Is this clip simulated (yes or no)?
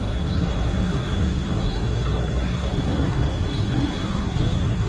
yes